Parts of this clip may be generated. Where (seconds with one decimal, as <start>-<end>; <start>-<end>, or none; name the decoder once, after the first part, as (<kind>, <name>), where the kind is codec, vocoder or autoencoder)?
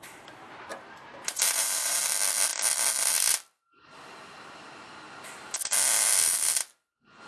0.7-2.0 (vocoder, BigVGAN v2)